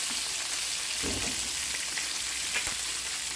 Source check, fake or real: real